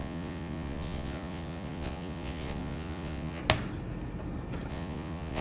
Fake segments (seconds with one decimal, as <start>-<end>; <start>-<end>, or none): 0.0-3.4; 4.7-5.4